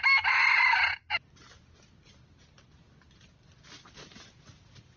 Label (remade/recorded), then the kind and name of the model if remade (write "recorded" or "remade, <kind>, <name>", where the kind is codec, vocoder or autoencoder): recorded